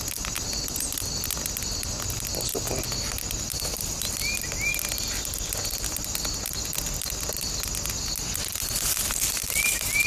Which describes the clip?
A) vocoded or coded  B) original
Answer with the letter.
B